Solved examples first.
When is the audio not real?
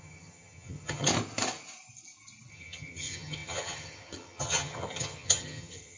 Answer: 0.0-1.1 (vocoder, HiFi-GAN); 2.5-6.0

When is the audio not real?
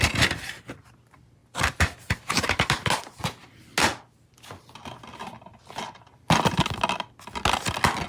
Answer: none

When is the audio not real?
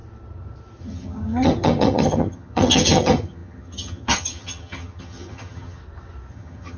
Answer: 0.8-5.8 (vocoder, HiFi-GAN); 6.3-6.8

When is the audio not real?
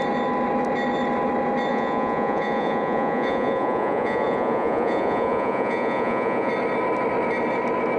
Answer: 1.7-6.5 (vocoder, Vocos)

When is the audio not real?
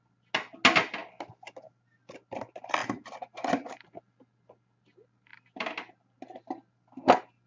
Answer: none